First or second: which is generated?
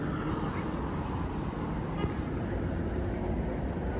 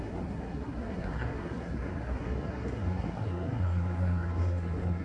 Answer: second